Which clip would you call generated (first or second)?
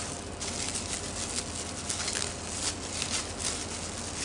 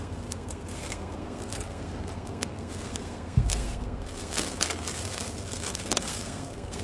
second